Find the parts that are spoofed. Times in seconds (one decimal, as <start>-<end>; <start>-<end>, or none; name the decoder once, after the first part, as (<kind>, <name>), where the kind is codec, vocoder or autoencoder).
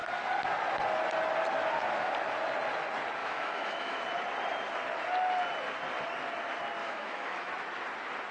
3.2-4.0 (autoencoder, DAC-VAE); 6.8-7.5